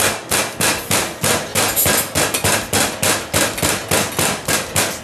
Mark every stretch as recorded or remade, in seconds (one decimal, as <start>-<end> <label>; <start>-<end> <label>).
0.0-5.0 recorded